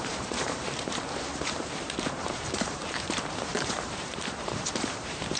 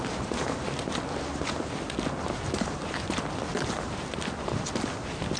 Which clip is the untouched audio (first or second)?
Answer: second